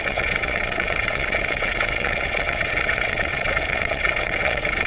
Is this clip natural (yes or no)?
no